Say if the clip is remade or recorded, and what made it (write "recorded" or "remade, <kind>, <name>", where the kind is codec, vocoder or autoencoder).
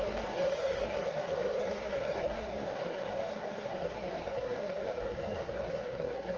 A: remade, codec, SNAC